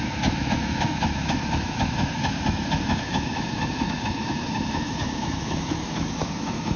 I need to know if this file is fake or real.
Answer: fake